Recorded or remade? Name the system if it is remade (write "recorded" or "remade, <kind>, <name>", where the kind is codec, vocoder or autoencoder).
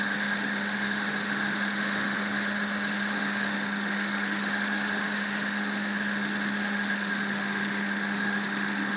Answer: remade, autoencoder, DAC-VAE